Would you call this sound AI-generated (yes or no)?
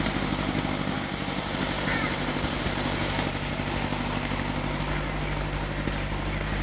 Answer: yes